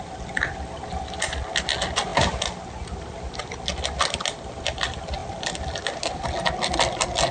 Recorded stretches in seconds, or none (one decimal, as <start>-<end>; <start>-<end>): 0.0-7.3

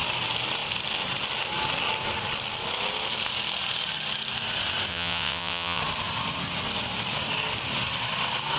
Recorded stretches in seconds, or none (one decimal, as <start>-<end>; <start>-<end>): 0.0-4.9; 5.8-8.6